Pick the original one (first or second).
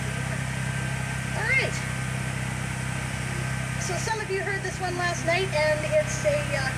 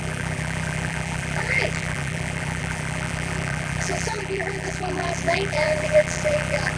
first